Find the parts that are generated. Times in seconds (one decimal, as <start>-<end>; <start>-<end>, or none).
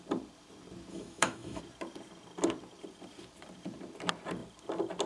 0.9-1.6